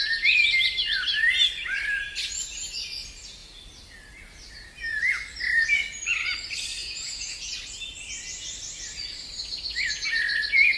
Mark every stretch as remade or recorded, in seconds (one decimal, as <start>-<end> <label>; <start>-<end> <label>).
0.0-6.8 recorded; 6.8-7.5 remade; 7.5-10.8 recorded